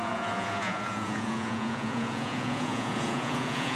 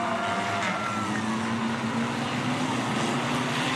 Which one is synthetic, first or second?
first